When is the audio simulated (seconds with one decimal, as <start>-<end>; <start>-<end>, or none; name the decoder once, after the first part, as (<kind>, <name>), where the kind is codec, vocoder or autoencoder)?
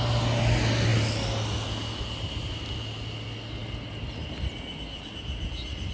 none